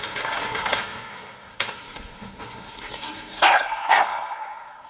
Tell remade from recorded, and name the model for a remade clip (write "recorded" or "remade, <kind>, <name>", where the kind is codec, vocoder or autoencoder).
remade, codec, SNAC